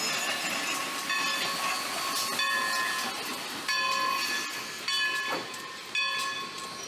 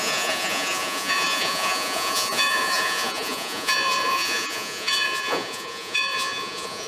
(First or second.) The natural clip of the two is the first